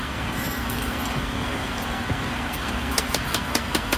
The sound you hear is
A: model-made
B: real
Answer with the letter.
A